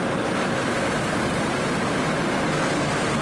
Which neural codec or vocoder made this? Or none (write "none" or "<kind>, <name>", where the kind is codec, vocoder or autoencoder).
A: none